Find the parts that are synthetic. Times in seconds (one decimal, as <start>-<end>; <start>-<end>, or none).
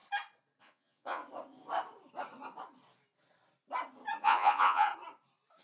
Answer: 0.6-1.2; 4.2-4.9